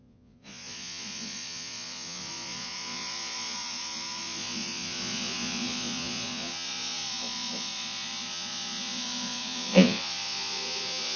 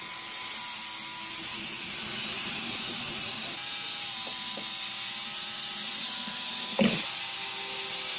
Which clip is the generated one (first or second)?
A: first